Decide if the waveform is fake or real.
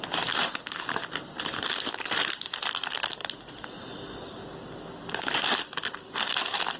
real